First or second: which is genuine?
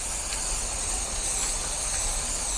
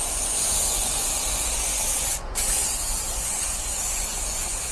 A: first